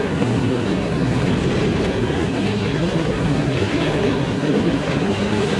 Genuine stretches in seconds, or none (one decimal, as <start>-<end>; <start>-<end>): 1.3-1.9